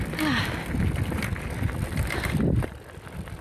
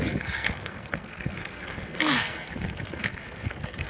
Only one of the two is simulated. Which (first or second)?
second